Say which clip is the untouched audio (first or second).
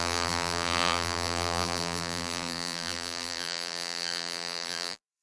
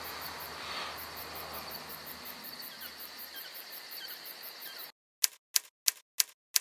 second